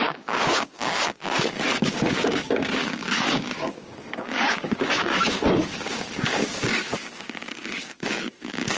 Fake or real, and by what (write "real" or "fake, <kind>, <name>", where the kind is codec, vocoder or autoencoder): fake, codec, DAC